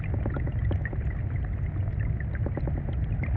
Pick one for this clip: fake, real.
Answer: real